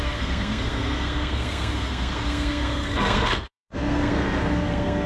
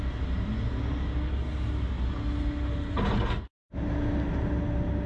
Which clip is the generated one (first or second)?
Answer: first